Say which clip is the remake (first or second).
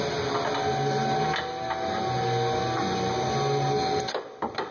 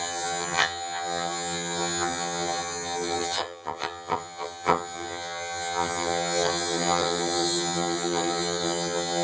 second